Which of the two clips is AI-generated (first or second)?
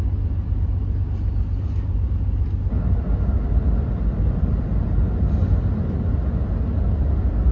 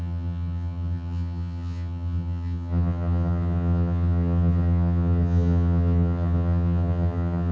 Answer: second